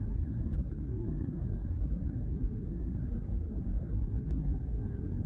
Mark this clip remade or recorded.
remade